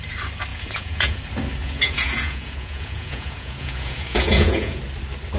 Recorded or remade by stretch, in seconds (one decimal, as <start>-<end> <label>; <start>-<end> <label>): 0.0-0.5 recorded; 0.5-1.2 remade; 1.2-1.6 recorded; 1.6-4.8 remade; 4.8-5.4 recorded